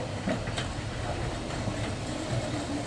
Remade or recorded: recorded